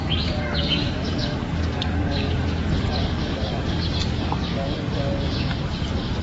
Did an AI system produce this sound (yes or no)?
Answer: yes